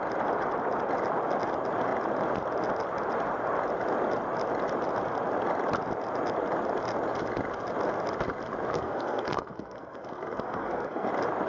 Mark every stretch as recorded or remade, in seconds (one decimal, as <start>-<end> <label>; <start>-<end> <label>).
0.0-8.7 recorded; 8.7-11.1 remade; 11.1-11.5 recorded